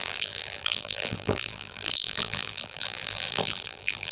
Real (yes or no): no